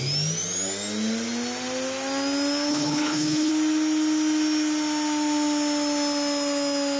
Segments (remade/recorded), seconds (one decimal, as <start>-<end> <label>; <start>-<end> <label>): 0.0-2.7 recorded; 2.7-3.5 remade; 3.5-7.0 recorded

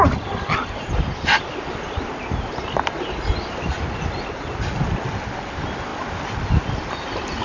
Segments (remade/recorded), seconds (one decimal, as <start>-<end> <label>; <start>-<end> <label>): 0.0-7.4 recorded

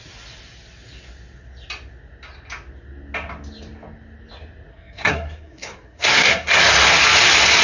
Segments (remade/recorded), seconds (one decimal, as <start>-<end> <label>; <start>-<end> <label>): 0.0-4.7 recorded; 4.7-6.6 remade; 6.6-7.6 recorded

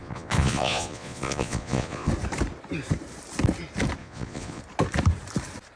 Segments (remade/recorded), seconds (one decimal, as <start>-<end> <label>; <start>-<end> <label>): 0.0-2.1 remade; 2.1-4.0 recorded; 4.0-4.6 remade; 4.6-5.8 recorded

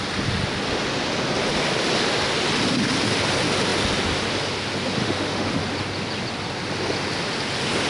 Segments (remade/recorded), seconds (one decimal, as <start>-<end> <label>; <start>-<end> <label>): 0.0-5.0 recorded; 5.0-5.6 remade; 5.6-7.9 recorded